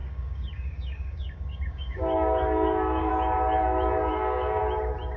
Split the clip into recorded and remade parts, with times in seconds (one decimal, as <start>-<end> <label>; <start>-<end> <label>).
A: 0.0-3.1 remade; 3.1-4.1 recorded; 4.1-4.6 remade; 4.6-5.2 recorded